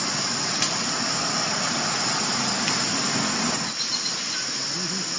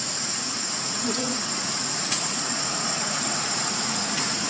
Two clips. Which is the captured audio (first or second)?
first